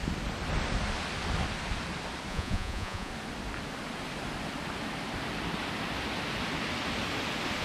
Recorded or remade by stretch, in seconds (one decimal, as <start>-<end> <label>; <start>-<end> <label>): 0.0-2.3 recorded; 2.3-3.1 remade; 3.1-7.6 recorded